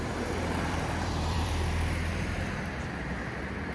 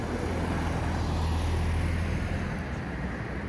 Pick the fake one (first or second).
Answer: first